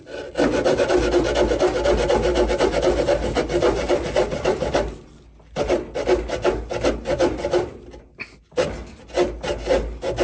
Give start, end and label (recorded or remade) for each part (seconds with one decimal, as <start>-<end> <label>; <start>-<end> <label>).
0.0-10.2 recorded